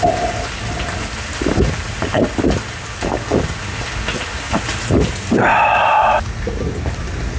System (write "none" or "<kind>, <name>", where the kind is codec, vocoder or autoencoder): none